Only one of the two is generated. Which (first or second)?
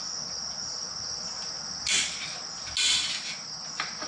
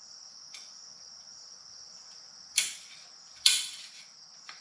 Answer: second